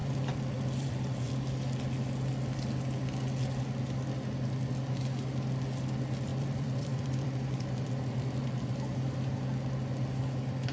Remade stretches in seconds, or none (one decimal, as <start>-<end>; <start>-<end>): 0.0-1.3; 6.3-8.7